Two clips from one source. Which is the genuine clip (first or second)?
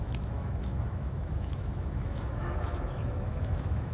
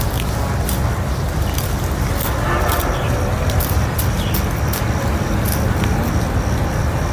second